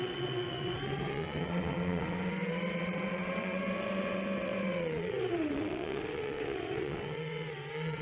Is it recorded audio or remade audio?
remade